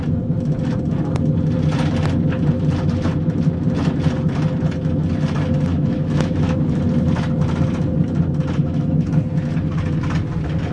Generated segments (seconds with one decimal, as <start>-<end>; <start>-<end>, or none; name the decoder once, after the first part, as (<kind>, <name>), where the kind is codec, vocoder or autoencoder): 5.7-6.8 (autoencoder, DAC-VAE); 8.6-9.1